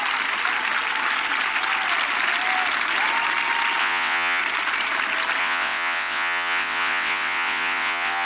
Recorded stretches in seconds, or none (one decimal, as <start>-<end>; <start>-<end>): 0.0-3.8; 4.4-5.4